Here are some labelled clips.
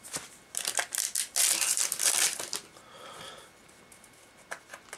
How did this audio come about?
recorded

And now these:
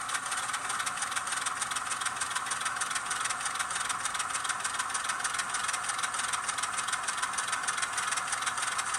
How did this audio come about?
recorded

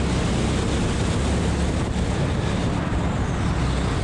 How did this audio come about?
recorded